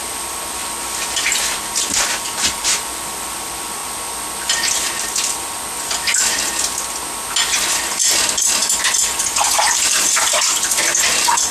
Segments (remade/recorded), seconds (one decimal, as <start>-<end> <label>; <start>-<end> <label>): 0.0-0.6 remade; 0.6-1.6 recorded; 1.6-3.8 remade; 3.8-7.8 recorded; 7.8-11.5 remade